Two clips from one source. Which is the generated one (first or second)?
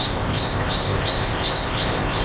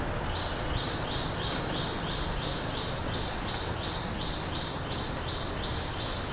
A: first